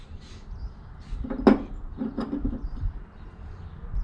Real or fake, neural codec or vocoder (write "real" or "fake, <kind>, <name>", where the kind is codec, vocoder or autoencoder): real